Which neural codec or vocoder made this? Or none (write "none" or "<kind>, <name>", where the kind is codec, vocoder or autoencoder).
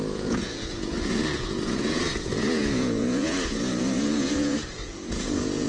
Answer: vocoder, Vocos